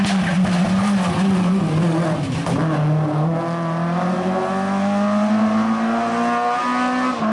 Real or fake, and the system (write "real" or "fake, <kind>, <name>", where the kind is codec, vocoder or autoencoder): real